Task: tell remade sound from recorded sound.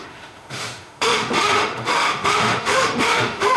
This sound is remade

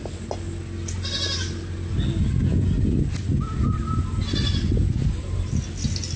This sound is recorded